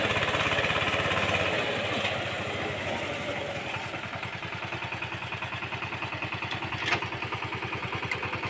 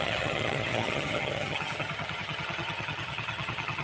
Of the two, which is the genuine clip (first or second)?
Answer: first